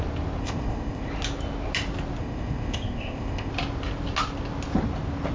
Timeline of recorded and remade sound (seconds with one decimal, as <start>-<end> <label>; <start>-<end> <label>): 0.0-0.4 recorded; 0.4-1.1 remade; 1.1-2.2 recorded; 2.2-3.5 remade; 3.5-5.3 recorded